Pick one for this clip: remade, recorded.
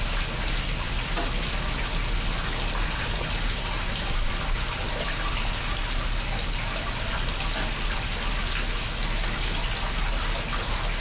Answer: recorded